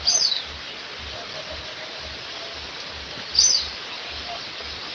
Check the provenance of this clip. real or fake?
real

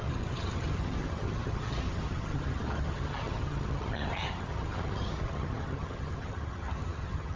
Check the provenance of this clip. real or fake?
fake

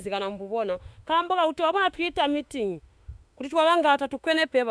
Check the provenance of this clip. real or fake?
fake